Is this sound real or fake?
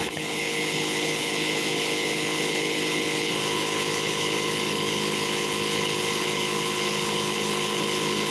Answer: fake